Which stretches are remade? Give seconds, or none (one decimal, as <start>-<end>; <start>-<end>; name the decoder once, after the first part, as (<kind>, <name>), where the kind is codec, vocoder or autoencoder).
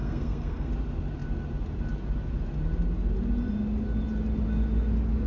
0.0-0.7 (codec, SNAC)